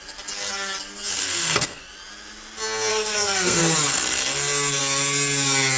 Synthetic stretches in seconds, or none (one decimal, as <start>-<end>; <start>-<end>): 1.2-1.8; 2.9-3.6